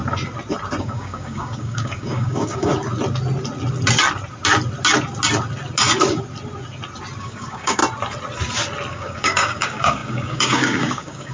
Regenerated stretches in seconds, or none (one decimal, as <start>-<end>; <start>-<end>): 0.8-2.7; 7.2-7.8; 8.9-11.3

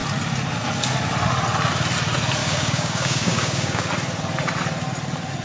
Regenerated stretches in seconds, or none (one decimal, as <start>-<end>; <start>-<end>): 2.4-3.9

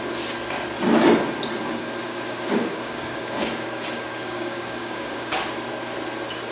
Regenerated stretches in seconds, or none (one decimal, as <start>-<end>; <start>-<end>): 1.6-5.5

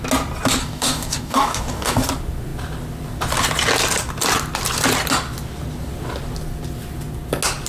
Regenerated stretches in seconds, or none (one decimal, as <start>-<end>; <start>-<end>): 0.6-2.0

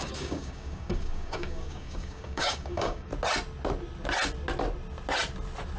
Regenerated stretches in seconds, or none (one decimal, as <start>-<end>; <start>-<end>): 0.0-3.1

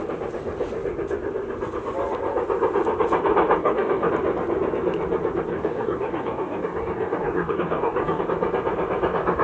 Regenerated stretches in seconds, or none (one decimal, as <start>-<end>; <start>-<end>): 3.6-4.1; 5.5-8.2

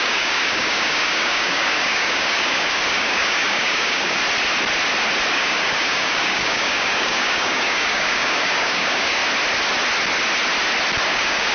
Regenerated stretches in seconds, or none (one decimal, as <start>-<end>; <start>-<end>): 0.0-4.2; 5.3-9.2; 11.1-11.5